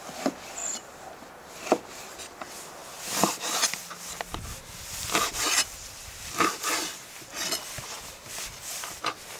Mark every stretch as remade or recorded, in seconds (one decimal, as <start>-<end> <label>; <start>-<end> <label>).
0.0-2.8 remade; 2.8-5.7 recorded; 5.7-9.4 remade